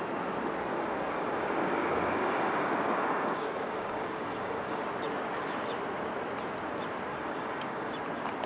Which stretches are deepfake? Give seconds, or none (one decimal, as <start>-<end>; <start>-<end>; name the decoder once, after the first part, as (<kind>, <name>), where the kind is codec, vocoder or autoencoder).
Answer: 0.7-4.8 (codec, DAC); 7.1-7.9

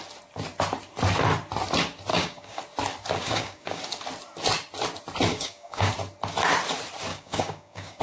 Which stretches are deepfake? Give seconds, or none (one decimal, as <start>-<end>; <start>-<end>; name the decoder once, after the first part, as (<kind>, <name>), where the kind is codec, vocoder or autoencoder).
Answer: 2.1-2.6 (codec, DAC); 3.2-3.8; 5.3-5.9; 7.1-8.0

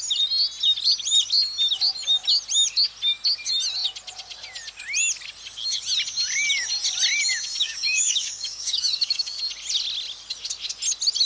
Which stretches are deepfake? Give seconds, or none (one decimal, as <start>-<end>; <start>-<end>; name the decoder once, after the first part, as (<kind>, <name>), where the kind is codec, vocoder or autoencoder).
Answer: 7.6-9.4 (codec, DAC)

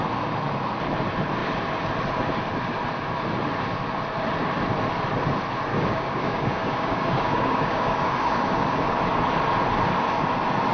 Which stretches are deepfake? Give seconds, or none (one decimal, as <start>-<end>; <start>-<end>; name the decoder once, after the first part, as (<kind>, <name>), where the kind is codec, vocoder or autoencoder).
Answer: 5.7-9.0 (codec, DAC)

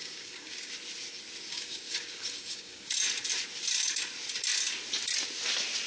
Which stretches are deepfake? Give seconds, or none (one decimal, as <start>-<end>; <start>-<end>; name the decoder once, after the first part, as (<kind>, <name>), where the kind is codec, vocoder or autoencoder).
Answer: 0.0-0.7 (codec, DAC); 1.4-2.9